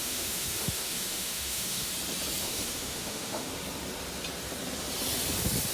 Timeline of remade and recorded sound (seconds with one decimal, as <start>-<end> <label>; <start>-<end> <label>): 0.0-1.9 remade; 1.9-2.4 recorded; 2.4-3.5 remade; 3.5-5.7 recorded